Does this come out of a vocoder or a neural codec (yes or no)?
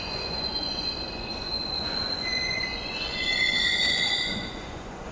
yes